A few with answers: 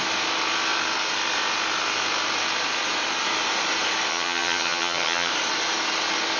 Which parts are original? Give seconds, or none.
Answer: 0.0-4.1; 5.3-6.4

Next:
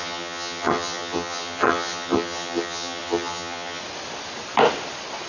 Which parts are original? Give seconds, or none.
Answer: 3.8-5.3

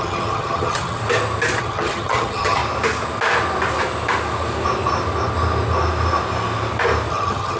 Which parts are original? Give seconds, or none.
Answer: 1.0-1.6; 2.6-7.1

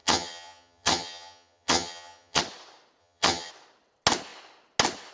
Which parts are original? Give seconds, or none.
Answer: 2.4-3.0; 3.5-5.1

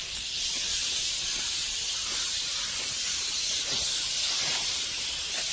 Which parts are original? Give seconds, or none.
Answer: 0.0-5.5

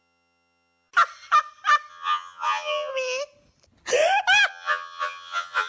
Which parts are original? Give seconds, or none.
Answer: 0.9-1.9; 2.9-4.5

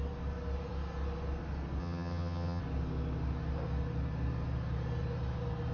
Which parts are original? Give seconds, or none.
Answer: 0.0-1.8; 2.6-5.7